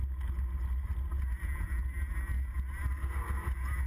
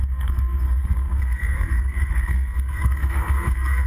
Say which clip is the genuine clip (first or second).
first